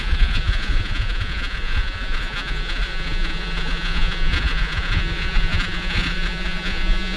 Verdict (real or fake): fake